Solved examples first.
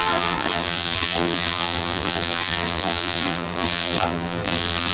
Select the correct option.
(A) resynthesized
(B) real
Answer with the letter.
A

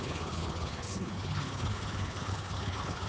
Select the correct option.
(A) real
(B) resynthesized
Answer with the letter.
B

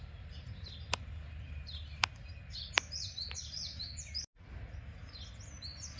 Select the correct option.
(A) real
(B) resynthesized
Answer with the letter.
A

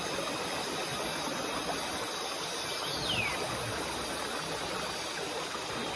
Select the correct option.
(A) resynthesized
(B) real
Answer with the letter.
B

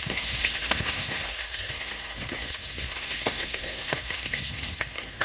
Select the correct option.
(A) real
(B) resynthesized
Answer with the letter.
B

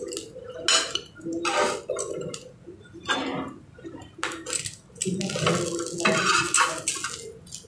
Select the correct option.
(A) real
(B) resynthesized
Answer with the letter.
A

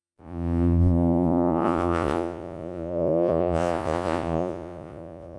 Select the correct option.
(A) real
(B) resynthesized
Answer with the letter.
B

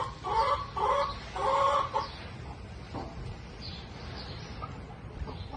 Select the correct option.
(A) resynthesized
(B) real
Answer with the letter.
B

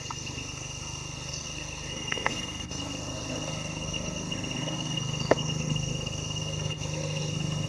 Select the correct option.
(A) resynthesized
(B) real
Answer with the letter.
A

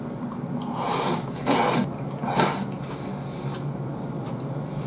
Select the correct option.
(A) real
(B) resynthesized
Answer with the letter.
A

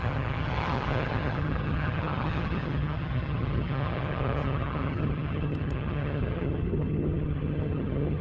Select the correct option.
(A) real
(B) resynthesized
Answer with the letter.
B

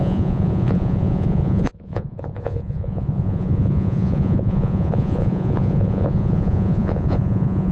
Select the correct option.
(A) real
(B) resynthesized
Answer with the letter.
B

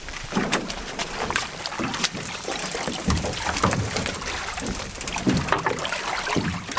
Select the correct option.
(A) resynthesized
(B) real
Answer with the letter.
A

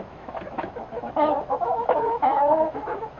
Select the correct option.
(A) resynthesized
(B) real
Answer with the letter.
A